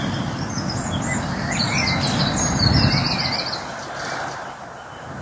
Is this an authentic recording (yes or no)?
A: yes